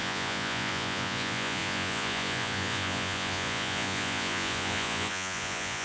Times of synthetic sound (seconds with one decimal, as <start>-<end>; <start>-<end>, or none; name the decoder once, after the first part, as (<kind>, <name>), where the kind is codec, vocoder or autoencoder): 0.0-5.8 (vocoder, Vocos)